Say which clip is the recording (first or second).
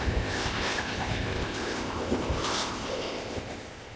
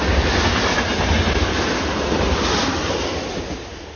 second